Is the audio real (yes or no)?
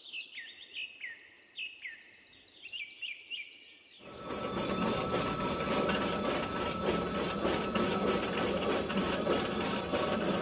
yes